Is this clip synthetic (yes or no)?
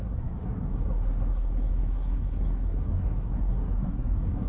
yes